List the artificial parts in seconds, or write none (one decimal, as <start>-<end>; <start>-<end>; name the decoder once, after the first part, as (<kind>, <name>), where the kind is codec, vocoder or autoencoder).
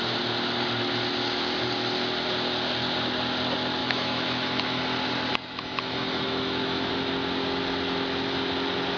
3.8-4.8 (autoencoder, DAC-VAE); 5.3-6.9